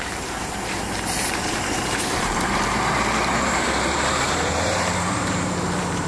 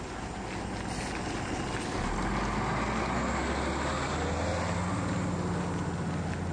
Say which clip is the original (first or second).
second